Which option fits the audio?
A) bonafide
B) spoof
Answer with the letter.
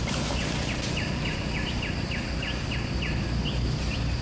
A